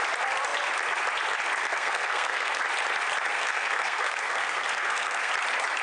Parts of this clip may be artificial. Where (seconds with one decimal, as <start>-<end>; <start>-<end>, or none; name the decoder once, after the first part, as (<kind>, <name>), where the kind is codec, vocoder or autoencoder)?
1.6-2.6 (codec, SNAC); 3.3-5.3

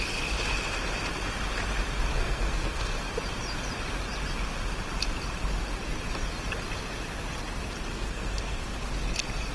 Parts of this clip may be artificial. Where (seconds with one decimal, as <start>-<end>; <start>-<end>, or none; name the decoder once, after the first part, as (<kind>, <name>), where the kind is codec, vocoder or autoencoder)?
2.1-3.1 (codec, SNAC); 7.9-8.6

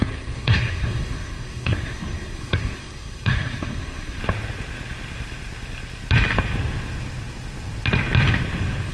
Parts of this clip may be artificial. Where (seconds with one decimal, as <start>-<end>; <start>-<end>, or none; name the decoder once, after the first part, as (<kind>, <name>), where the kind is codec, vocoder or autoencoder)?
0.0-4.2 (codec, SNAC)

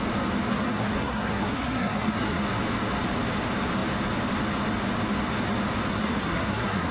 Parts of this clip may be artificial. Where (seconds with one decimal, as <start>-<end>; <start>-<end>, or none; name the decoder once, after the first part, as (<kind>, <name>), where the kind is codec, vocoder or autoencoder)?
0.5-2.4 (codec, SNAC); 5.9-6.9